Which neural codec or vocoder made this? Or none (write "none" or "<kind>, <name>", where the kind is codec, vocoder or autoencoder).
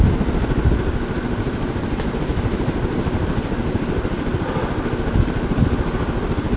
none